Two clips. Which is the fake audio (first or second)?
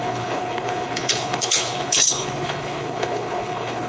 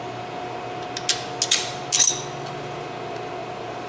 first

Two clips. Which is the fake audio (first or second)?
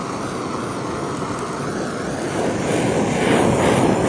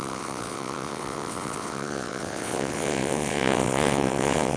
second